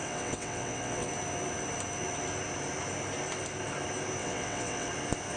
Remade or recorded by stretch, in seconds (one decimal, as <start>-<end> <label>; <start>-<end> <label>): 0.0-1.1 remade; 1.1-4.2 recorded; 4.2-4.9 remade; 4.9-5.4 recorded